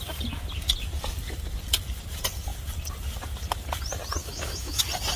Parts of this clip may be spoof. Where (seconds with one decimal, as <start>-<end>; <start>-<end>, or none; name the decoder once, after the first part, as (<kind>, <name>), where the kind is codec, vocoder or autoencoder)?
4.2-4.8 (autoencoder, DAC-VAE)